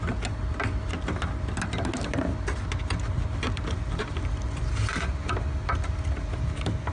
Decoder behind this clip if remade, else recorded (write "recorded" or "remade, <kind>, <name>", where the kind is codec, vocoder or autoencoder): recorded